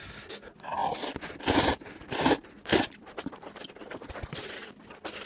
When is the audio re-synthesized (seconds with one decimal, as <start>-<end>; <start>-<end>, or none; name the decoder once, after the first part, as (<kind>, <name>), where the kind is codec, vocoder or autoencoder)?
0.8-4.0 (vocoder, BigVGAN v2)